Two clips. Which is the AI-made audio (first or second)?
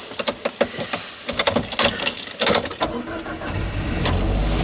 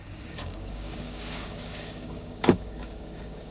second